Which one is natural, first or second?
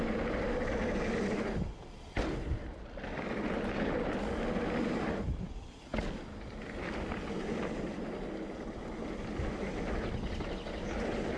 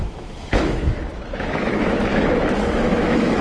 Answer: first